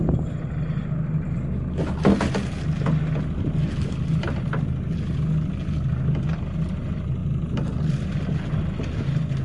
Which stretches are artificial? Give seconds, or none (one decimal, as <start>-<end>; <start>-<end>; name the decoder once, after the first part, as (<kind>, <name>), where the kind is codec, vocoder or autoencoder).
none